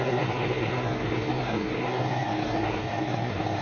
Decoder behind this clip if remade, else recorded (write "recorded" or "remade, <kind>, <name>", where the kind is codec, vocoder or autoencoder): remade, codec, SNAC